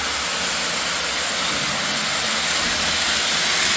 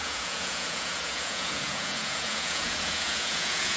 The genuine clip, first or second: first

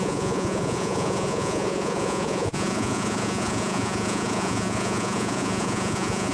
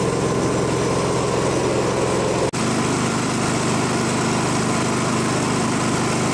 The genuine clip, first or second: second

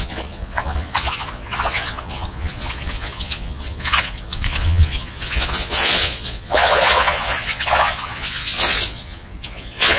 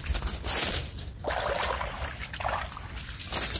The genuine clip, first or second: second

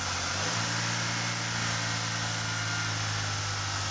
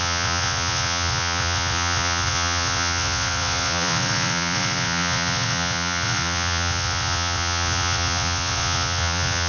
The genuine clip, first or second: first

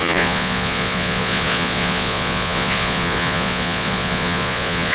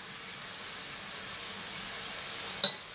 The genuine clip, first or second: second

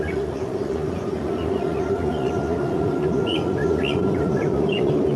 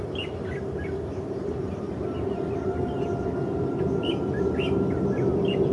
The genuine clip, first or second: second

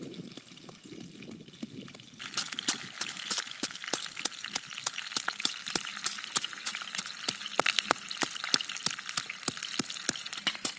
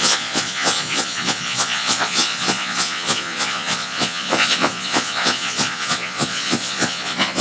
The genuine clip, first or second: first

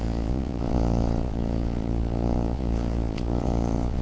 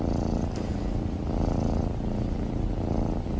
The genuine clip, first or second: second